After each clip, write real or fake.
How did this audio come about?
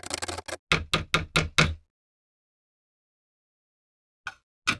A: real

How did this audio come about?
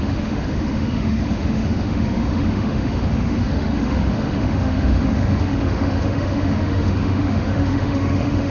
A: fake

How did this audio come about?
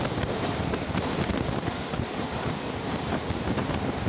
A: real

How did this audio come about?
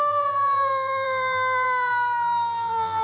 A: fake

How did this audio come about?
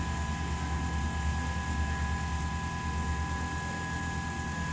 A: real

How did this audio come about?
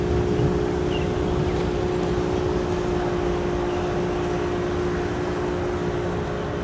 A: real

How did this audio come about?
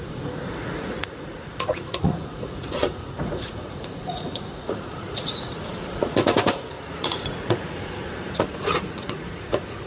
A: fake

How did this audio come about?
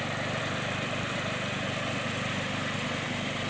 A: real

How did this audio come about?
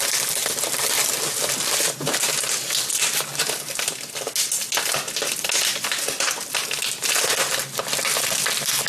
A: real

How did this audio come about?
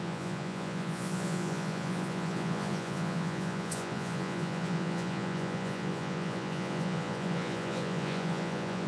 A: fake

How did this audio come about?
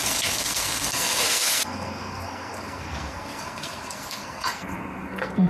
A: fake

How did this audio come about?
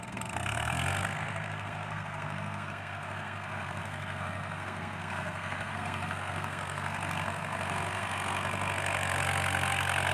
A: fake